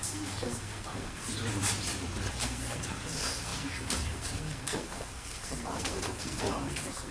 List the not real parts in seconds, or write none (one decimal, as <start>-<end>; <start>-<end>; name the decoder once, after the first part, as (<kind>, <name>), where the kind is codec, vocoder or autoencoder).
0.0-1.3 (codec, SNAC); 2.3-7.1